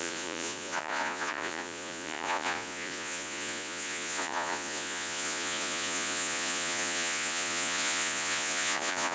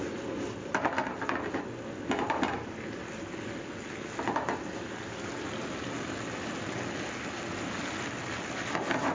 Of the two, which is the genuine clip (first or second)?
second